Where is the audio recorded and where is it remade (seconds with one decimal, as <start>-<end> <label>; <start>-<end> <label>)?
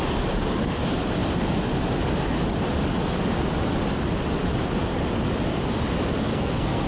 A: 0.0-6.3 recorded; 6.3-6.9 remade